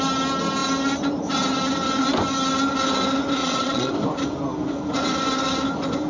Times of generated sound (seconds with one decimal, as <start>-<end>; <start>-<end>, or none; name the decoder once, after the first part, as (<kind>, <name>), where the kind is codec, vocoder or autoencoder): 3.4-3.9 (vocoder, Vocos)